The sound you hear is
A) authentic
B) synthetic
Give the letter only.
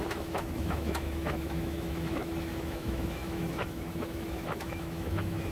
B